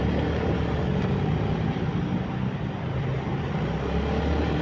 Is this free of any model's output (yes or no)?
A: yes